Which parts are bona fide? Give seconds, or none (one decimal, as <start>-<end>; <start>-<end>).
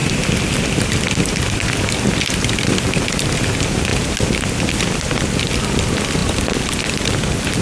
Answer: 0.0-7.6